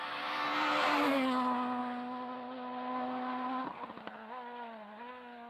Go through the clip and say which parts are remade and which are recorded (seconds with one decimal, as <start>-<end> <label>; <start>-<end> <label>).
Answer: 0.0-5.5 recorded